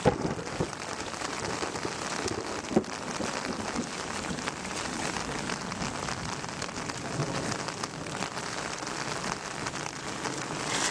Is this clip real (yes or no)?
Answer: yes